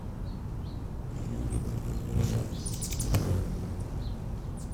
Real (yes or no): yes